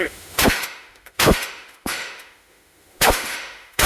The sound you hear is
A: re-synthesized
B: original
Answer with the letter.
A